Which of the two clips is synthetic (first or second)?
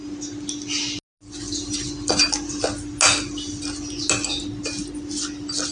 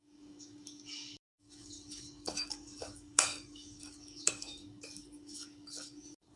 second